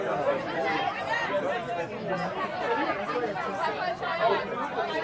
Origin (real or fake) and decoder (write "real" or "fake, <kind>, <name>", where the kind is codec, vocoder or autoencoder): real